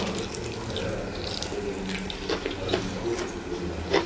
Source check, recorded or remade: recorded